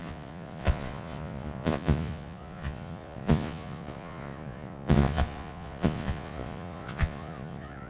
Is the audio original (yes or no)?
no